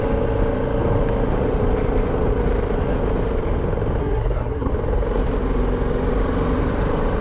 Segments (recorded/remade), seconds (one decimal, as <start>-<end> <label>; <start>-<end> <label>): 0.0-4.0 recorded; 4.0-4.7 remade; 4.7-7.2 recorded